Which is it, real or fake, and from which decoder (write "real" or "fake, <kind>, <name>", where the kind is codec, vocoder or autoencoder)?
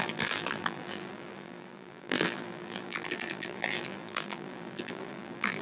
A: fake, vocoder, BigVGAN v2